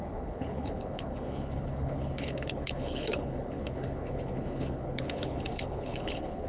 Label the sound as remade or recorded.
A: remade